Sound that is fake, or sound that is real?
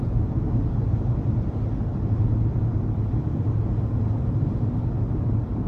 real